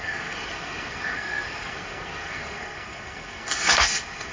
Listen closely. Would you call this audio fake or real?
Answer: fake